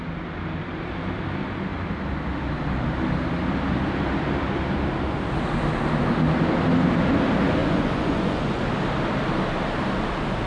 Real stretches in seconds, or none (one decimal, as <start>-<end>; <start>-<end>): 0.0-7.6; 8.6-10.5